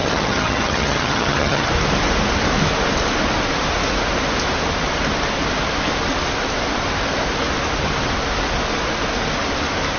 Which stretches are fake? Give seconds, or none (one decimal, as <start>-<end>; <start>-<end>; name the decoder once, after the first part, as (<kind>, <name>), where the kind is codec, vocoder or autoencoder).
0.0-1.7 (vocoder, HiFi-GAN)